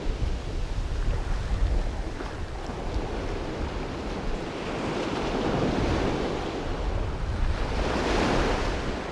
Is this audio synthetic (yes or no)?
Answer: no